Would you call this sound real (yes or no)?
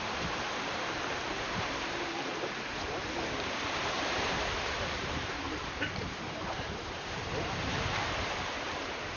no